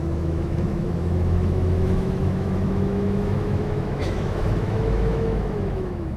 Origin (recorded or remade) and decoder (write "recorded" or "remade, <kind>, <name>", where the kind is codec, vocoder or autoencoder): remade, autoencoder, DAC-VAE